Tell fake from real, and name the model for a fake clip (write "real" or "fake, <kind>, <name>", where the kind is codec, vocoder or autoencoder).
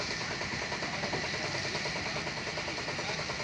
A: real